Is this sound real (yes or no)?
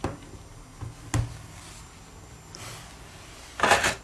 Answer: yes